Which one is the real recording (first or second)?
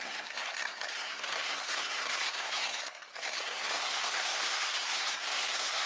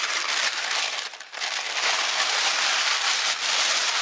second